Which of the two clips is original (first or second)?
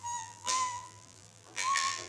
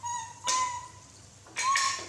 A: second